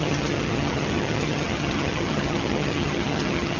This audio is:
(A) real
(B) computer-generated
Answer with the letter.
B